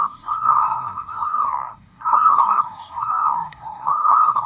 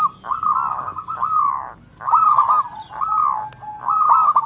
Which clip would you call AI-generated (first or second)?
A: first